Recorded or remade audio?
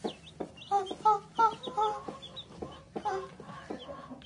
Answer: recorded